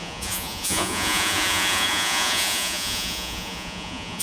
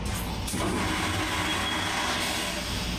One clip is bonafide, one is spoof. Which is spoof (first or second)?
first